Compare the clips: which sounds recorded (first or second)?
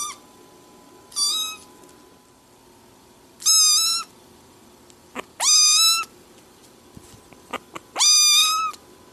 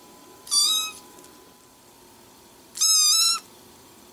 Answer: first